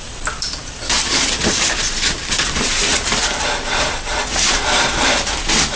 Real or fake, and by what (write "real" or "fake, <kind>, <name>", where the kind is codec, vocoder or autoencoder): fake, vocoder, BigVGAN v2